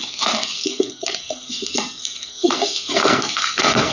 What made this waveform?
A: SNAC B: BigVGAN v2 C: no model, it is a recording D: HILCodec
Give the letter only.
A